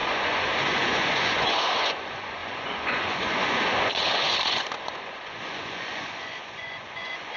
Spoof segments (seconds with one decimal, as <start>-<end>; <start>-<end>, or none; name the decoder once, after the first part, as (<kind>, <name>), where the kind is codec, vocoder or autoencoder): 0.0-7.4 (vocoder, Vocos)